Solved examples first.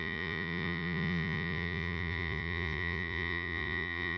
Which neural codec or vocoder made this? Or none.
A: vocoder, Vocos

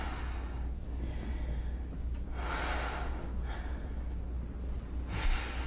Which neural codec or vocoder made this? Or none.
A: none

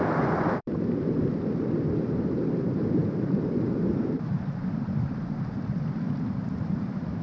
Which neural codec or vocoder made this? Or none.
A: none